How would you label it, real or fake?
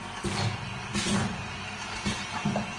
real